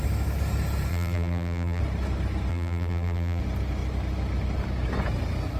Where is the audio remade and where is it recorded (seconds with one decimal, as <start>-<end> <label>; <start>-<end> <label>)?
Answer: 0.0-0.9 recorded; 0.9-1.8 remade; 1.8-2.5 recorded; 2.5-3.4 remade; 3.4-5.6 recorded